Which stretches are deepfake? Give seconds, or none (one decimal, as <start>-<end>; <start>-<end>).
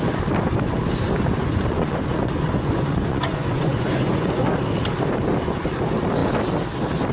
1.4-4.3